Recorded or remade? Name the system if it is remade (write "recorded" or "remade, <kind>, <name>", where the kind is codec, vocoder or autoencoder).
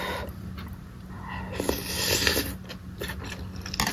recorded